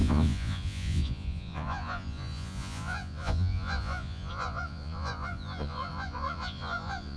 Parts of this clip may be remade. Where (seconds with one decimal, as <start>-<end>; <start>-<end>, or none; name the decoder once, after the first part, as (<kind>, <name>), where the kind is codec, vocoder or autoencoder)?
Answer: 0.0-7.2 (vocoder, Vocos)